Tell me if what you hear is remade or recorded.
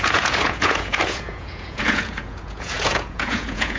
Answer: remade